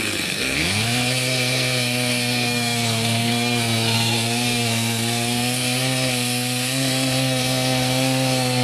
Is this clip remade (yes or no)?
yes